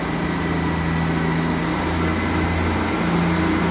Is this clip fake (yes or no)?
no